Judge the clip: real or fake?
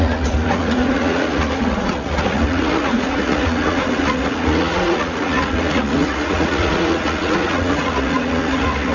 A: fake